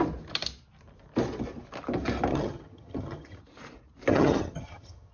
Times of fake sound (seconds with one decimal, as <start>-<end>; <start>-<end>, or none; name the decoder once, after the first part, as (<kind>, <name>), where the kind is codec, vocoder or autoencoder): 2.3-3.4 (vocoder, HiFi-GAN); 4.1-5.1